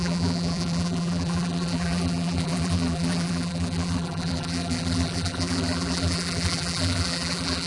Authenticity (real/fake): fake